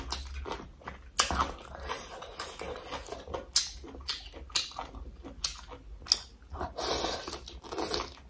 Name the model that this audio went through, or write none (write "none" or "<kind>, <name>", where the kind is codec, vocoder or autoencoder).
none